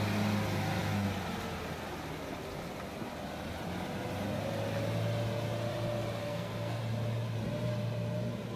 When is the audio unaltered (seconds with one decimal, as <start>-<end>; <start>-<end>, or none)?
0.0-6.2; 6.8-8.6